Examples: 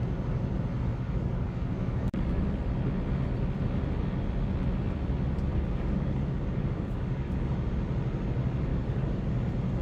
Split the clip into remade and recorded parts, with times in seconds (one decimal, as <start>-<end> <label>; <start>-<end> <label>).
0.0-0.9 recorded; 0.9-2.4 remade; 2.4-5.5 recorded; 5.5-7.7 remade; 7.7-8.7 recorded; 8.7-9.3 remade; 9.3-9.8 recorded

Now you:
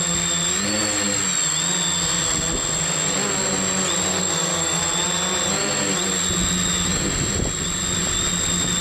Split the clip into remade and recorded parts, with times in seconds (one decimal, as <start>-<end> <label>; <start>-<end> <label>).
0.0-4.1 recorded; 4.1-4.8 remade; 4.8-8.8 recorded

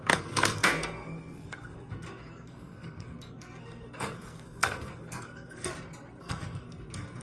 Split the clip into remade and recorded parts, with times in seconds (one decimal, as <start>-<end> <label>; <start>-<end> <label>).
0.0-5.7 remade; 5.7-6.2 recorded; 6.2-7.2 remade

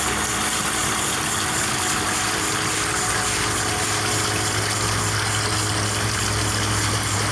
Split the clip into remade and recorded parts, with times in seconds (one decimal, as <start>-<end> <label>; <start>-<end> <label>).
0.0-7.3 recorded

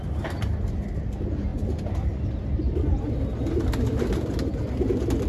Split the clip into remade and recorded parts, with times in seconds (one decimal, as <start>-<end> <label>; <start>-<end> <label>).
0.0-5.3 recorded

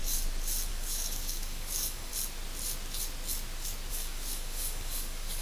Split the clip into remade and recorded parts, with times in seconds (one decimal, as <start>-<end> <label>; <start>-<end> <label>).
0.0-0.7 recorded; 0.7-2.1 remade; 2.1-3.9 recorded; 3.9-5.4 remade